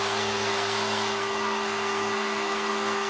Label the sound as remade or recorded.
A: remade